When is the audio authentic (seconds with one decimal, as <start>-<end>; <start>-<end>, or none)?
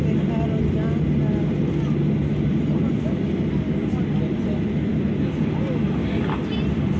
0.0-7.0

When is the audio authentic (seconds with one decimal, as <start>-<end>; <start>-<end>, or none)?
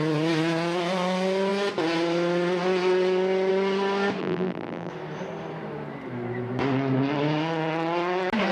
0.0-4.2; 4.9-8.5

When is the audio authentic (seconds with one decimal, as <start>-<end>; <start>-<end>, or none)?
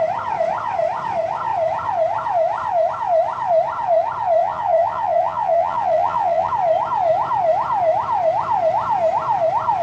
0.0-4.4; 6.5-9.8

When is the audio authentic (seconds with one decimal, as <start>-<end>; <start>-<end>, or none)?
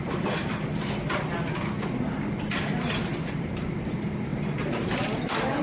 0.0-5.6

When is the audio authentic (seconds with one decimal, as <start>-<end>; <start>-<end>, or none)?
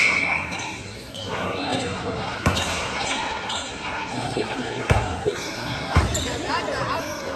6.0-7.0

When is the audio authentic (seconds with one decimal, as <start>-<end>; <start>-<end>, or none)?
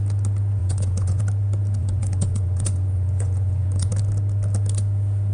0.0-0.6; 1.2-1.8; 3.9-5.3